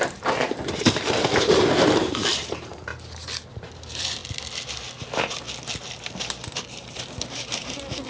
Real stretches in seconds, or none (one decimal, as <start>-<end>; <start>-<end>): 2.9-3.5; 4.2-7.0